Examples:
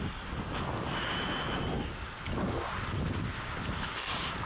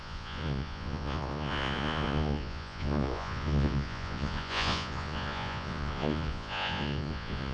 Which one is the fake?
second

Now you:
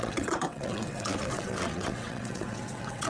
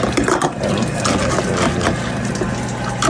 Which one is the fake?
first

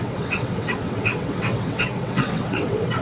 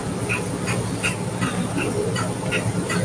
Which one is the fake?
first